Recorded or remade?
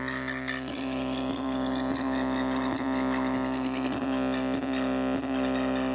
recorded